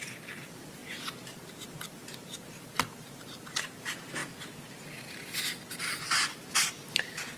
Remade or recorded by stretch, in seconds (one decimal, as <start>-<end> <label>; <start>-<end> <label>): 0.0-4.2 remade; 4.2-6.6 recorded; 6.6-7.4 remade

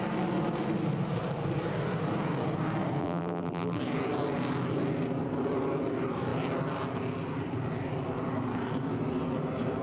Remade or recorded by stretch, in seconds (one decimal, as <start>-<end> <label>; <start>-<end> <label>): 0.0-3.0 recorded; 3.0-3.8 remade; 3.8-9.8 recorded

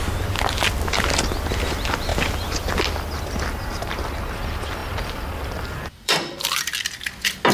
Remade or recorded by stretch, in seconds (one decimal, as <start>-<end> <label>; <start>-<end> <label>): 0.0-4.8 recorded; 4.8-6.5 remade; 6.5-7.5 recorded

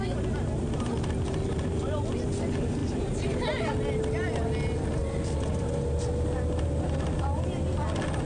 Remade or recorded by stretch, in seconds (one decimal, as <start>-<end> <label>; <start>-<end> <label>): 0.0-8.3 recorded

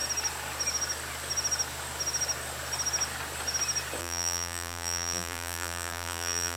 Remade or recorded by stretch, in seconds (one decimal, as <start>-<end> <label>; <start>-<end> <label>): 0.0-4.0 recorded; 4.0-6.6 remade

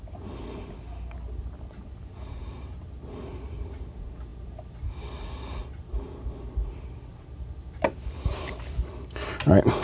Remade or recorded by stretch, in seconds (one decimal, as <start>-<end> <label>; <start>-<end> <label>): 0.0-7.1 recorded; 7.1-8.5 remade; 8.5-9.8 recorded

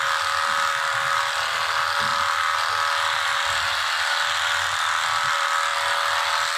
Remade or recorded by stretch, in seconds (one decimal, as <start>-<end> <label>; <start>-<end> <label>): 0.0-6.6 recorded